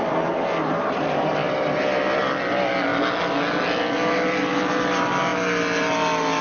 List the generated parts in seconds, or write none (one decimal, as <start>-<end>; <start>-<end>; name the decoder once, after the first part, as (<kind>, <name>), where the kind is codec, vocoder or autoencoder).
1.4-2.2 (vocoder, BigVGAN v2)